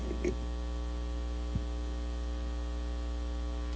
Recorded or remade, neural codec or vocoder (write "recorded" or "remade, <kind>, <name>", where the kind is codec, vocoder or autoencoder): recorded